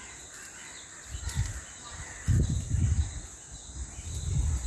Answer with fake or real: real